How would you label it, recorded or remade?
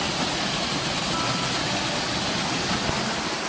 recorded